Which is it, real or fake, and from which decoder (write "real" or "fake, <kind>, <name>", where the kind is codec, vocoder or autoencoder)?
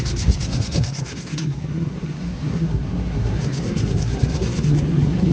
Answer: fake, codec, SNAC